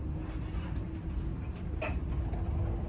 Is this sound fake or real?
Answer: real